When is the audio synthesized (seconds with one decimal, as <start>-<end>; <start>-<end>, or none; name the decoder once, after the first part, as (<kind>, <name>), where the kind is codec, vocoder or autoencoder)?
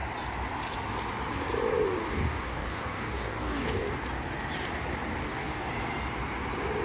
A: 2.0-3.9 (codec, DAC); 5.2-5.7